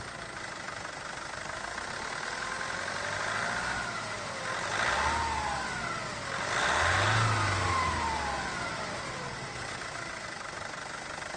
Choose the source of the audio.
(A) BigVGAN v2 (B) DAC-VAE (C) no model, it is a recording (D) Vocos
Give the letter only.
C